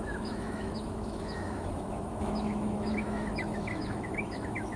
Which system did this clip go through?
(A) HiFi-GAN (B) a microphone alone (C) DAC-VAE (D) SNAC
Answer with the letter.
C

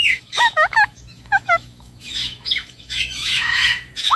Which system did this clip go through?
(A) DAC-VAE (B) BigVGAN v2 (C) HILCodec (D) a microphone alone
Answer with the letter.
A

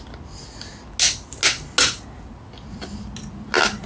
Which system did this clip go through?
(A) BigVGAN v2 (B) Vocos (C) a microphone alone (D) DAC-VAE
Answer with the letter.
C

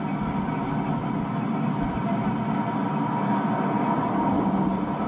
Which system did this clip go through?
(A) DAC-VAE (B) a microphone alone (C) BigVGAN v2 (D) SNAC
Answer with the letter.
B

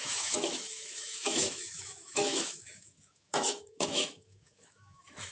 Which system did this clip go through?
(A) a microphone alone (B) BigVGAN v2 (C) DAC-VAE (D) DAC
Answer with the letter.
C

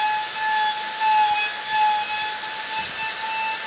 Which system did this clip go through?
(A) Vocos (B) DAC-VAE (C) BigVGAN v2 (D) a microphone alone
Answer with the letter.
D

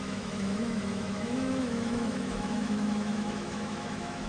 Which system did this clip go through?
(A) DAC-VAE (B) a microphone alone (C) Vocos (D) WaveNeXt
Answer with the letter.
A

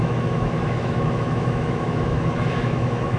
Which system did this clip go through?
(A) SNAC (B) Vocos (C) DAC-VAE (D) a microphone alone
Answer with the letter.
C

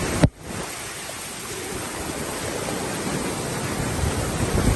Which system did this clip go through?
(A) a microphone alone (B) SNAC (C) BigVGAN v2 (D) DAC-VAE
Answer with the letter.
A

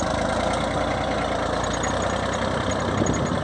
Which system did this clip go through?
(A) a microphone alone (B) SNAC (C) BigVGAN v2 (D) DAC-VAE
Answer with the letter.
A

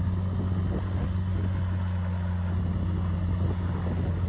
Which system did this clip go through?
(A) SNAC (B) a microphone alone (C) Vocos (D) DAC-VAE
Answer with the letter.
B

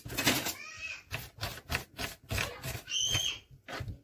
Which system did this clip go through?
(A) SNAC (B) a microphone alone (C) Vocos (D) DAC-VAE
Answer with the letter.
B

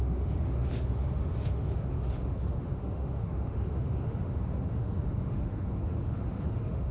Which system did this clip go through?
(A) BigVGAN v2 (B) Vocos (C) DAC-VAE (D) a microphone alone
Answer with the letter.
C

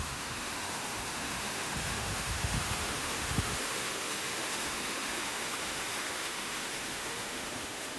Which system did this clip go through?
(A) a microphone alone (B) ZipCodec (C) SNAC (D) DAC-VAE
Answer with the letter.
D